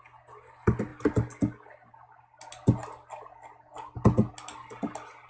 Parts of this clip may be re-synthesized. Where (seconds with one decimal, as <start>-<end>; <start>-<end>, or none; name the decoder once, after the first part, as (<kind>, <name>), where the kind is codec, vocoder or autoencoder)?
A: none